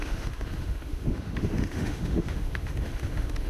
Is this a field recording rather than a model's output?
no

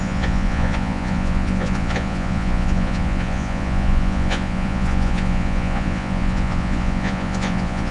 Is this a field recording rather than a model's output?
no